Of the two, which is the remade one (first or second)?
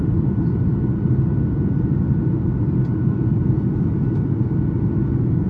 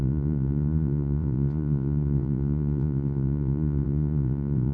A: second